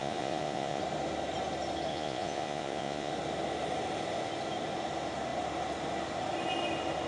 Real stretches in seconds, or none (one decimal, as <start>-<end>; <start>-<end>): 0.8-1.9; 3.1-7.1